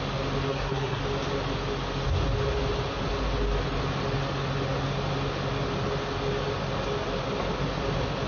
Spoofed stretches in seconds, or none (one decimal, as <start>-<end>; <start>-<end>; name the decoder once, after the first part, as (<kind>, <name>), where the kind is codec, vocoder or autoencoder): 0.5-1.0 (codec, SNAC)